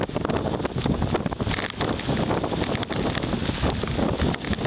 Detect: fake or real real